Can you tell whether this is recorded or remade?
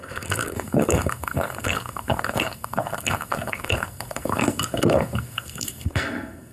remade